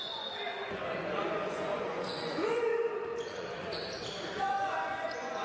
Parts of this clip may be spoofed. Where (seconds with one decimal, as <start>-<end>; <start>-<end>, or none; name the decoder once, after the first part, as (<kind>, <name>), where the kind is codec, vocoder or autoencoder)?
0.0-2.7 (vocoder, Vocos); 3.2-3.8; 4.4-5.4